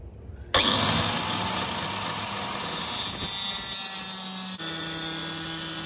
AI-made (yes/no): no